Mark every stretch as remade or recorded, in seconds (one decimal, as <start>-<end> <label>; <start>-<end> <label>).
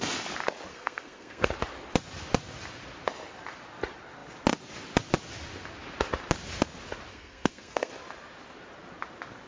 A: 0.0-0.7 recorded; 0.7-1.5 remade; 1.5-7.1 recorded; 7.1-7.9 remade; 7.9-9.5 recorded